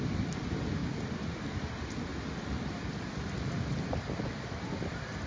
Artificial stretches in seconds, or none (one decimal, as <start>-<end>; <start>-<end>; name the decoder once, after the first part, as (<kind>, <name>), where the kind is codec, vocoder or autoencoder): 0.8-1.4 (vocoder, BigVGAN v2); 2.1-5.3